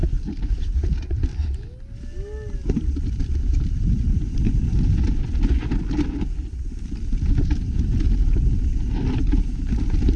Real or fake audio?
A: real